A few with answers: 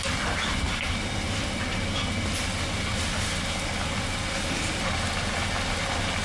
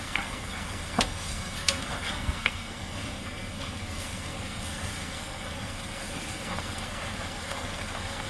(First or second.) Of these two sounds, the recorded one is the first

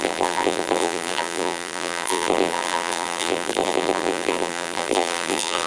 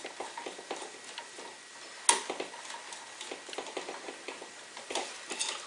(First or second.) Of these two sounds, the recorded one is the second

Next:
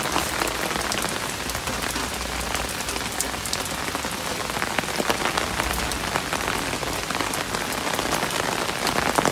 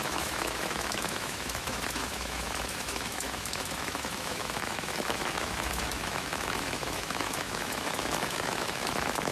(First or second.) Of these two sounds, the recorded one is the first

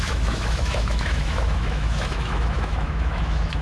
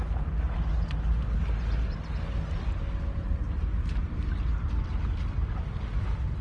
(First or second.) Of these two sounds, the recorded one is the second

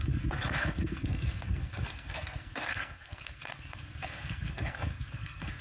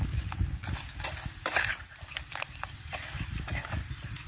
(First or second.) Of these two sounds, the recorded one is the second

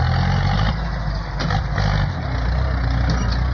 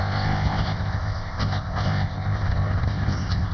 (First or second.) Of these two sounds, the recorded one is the first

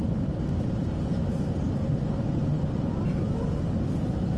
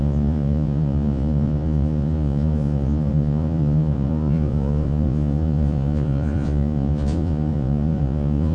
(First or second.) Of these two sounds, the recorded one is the first